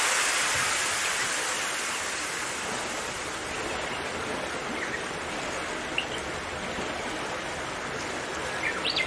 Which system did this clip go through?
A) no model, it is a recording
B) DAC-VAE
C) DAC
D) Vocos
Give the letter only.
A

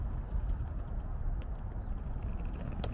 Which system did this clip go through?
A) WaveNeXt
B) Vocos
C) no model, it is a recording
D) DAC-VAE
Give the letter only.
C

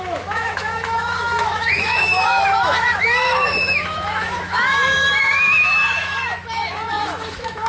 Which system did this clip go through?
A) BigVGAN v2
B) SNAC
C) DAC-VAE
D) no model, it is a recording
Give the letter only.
C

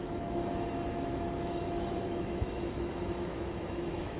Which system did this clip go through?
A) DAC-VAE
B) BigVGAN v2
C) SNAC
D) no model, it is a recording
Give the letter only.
A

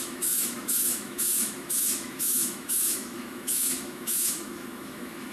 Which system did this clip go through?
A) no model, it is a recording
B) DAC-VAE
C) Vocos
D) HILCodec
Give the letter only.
B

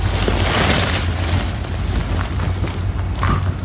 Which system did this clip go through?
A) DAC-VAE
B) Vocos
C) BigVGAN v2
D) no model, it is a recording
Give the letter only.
D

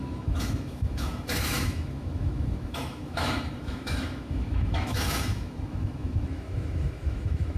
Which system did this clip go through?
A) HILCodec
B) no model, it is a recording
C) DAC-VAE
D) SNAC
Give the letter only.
C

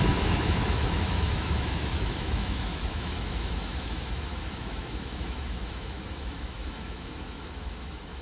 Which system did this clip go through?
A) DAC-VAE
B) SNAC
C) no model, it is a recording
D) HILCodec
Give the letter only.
A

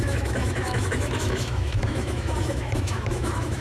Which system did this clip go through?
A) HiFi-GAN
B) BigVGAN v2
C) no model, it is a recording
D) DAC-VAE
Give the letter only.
D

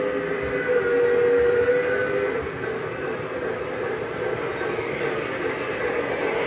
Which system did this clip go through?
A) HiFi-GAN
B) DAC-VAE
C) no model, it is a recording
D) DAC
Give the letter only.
C